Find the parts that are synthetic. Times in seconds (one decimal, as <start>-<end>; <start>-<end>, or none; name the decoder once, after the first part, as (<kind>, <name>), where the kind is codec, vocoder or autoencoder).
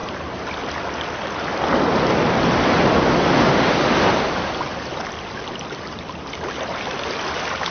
none